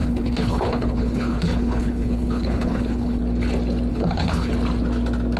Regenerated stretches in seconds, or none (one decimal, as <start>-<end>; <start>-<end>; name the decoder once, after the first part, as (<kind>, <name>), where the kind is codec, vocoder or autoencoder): 0.0-3.2 (codec, HILCodec); 3.9-4.5